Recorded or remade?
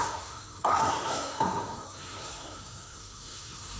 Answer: remade